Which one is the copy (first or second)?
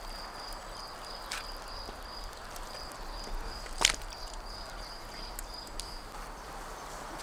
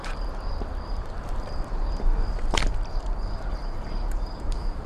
second